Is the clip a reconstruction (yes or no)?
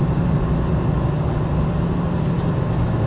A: no